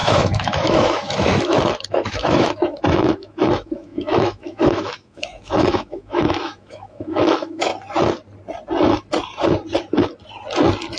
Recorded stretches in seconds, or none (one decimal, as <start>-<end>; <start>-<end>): 7.7-11.0